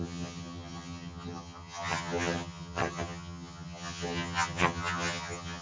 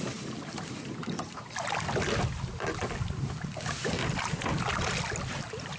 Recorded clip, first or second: second